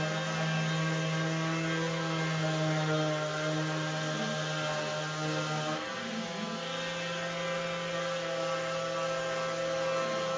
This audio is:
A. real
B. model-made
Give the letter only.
A